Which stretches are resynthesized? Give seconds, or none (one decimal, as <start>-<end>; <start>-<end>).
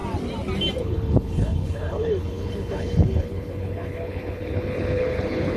0.8-5.6